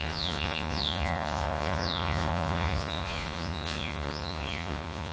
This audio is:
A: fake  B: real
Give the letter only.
A